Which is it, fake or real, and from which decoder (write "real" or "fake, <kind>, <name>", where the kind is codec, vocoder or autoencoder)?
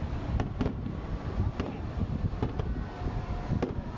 fake, vocoder, BigVGAN v2